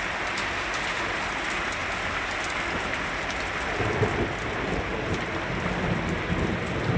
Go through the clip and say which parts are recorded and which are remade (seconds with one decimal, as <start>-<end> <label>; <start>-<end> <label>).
0.0-7.0 recorded